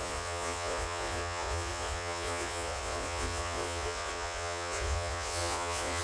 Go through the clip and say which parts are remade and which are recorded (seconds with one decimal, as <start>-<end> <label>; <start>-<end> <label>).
0.0-6.0 remade